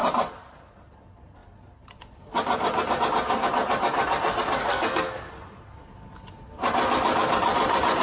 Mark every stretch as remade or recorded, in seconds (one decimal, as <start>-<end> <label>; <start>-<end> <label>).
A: 0.0-4.6 recorded; 4.6-5.3 remade; 5.3-8.0 recorded